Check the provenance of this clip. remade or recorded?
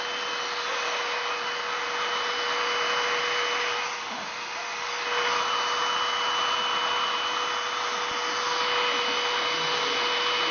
recorded